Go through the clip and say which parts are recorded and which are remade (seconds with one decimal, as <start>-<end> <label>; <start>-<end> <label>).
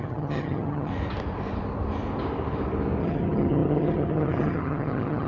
0.0-0.9 remade; 0.9-3.0 recorded; 3.0-5.3 remade